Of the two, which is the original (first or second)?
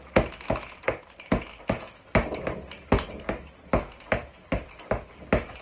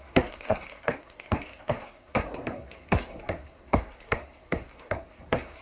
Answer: first